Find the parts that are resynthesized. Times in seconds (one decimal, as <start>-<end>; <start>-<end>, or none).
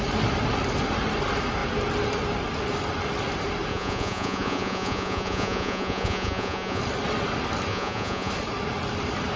3.7-6.8; 7.7-8.3